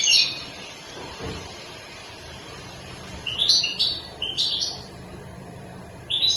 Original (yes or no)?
no